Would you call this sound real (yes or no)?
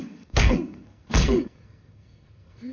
no